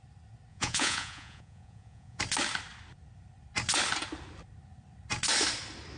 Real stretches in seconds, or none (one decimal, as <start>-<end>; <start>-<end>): 0.0-0.5; 2.2-6.0